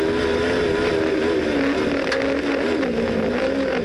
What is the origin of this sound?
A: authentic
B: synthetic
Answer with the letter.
A